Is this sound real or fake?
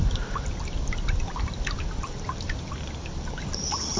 real